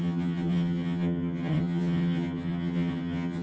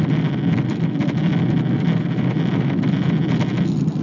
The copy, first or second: first